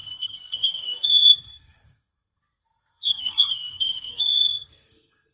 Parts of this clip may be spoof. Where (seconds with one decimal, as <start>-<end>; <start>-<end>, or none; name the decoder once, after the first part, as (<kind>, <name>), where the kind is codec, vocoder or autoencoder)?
0.0-5.3 (codec, SNAC)